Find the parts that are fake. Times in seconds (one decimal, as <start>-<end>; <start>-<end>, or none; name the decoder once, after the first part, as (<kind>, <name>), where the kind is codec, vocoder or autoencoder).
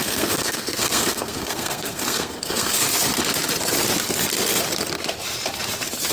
0.0-2.8 (codec, SNAC)